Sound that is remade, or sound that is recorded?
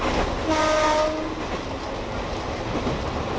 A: recorded